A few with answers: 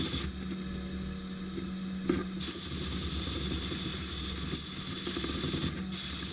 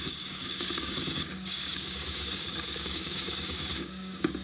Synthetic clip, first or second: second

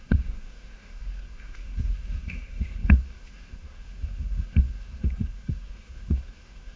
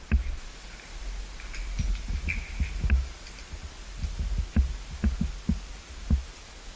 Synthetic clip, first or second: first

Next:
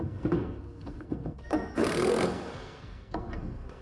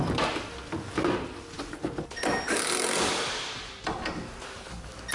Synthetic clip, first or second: first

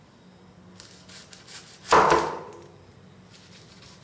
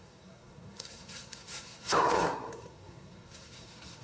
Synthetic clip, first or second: second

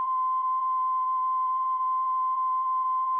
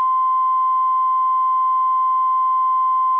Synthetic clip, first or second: first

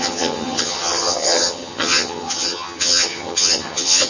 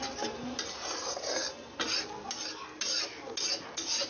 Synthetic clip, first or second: first